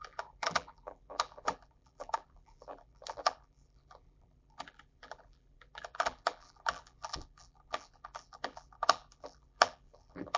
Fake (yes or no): yes